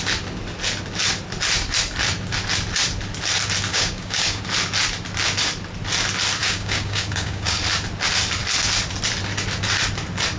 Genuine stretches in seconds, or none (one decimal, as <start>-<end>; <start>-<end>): 0.0-3.7; 4.4-6.4; 7.6-10.4